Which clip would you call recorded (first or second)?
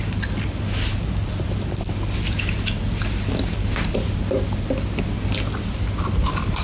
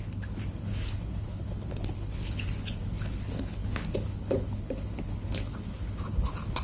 first